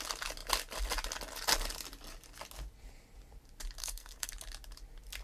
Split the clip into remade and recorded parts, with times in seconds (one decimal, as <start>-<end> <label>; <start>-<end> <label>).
0.0-3.8 recorded; 3.8-4.3 remade; 4.3-5.2 recorded